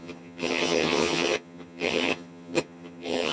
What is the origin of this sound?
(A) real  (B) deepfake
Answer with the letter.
B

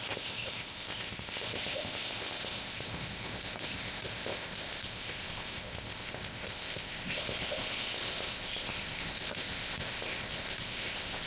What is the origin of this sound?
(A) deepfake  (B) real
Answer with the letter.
A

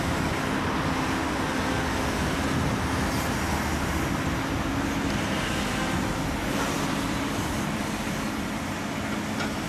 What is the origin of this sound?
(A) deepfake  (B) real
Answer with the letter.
B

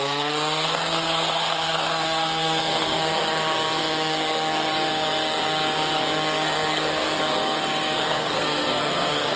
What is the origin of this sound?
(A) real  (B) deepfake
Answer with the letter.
B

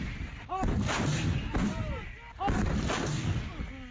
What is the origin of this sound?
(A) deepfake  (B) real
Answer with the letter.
B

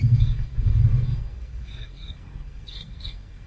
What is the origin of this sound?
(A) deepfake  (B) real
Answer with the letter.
A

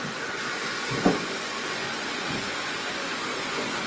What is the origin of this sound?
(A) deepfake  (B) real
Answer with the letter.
A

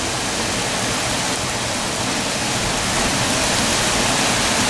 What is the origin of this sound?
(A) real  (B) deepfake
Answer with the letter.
A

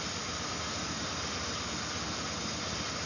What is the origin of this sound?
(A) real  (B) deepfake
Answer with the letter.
A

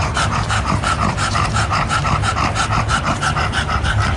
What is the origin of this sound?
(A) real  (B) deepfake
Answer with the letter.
A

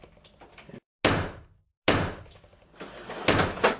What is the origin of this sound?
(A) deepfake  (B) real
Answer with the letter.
B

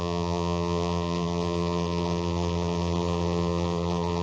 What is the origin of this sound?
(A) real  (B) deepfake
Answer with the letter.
B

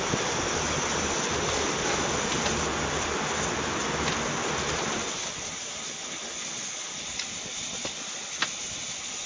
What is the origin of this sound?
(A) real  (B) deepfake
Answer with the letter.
A